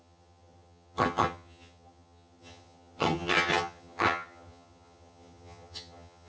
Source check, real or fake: fake